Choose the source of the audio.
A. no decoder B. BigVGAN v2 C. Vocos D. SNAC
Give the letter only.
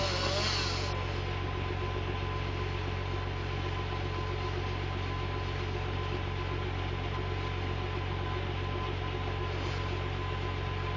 A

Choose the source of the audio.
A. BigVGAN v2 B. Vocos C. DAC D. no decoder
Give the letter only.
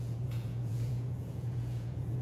B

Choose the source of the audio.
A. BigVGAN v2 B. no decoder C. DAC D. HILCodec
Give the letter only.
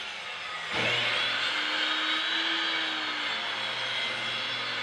B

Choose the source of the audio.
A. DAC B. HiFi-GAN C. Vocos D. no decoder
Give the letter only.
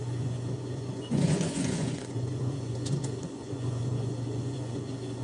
C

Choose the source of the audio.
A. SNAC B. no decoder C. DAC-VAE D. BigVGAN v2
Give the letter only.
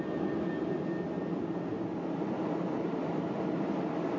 B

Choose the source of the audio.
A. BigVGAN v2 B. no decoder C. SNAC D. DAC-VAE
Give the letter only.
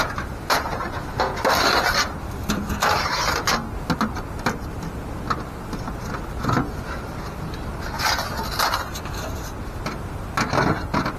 B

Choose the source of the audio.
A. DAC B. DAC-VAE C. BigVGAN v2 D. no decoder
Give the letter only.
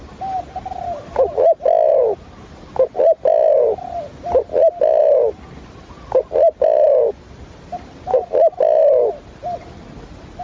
D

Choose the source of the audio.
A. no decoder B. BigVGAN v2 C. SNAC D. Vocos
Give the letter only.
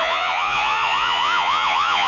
D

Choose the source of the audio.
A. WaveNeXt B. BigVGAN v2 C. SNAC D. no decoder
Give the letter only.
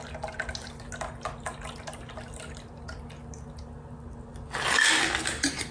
D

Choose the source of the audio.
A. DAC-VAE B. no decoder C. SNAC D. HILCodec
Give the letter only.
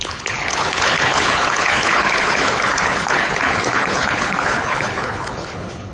D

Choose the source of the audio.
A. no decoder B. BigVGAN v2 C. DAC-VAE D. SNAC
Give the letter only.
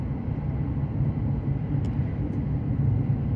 A